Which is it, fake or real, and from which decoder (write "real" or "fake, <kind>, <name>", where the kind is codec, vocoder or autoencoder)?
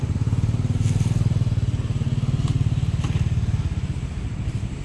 real